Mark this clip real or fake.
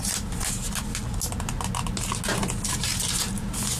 real